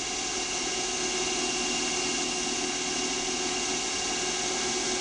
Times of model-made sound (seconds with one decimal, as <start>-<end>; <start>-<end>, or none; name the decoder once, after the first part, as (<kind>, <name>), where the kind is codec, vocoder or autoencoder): 0.0-5.0 (vocoder, BigVGAN v2)